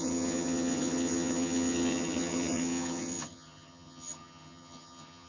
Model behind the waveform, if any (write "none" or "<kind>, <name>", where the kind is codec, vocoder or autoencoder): vocoder, HiFi-GAN